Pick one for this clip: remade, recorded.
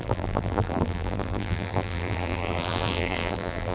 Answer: remade